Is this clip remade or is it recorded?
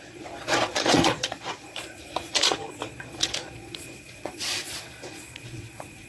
remade